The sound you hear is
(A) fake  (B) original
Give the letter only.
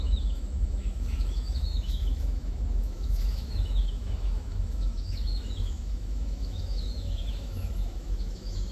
A